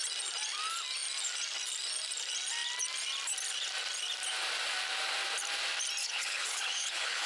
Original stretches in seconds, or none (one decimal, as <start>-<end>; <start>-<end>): 0.0-6.0